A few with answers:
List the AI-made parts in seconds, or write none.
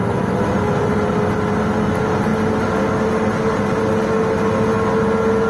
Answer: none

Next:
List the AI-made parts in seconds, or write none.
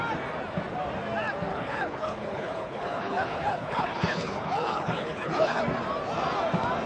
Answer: 1.5-5.6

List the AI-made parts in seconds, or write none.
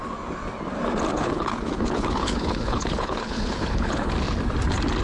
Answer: 1.1-4.1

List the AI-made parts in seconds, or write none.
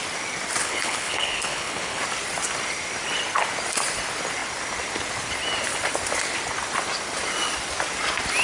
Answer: 0.6-2.0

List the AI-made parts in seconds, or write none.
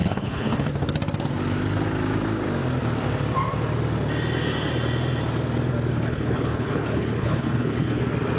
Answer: 0.0-0.7; 5.9-8.0